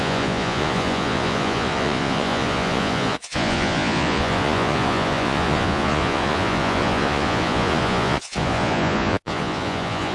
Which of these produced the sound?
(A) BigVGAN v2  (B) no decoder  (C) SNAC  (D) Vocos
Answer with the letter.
D